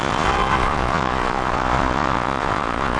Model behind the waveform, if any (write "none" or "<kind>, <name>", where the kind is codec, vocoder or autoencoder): vocoder, Vocos